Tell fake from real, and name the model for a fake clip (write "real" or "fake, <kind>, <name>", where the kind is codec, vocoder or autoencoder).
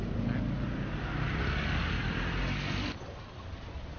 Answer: real